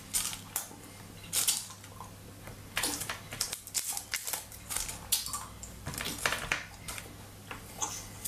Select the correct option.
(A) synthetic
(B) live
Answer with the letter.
B